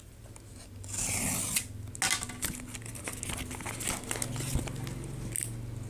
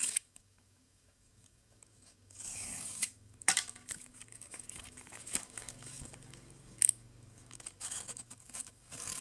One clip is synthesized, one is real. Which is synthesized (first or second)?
second